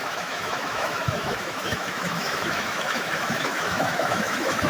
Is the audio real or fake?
fake